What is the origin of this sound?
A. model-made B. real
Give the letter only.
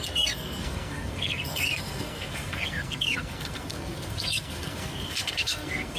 A